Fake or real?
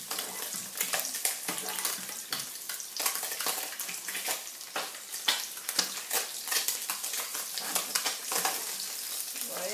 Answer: real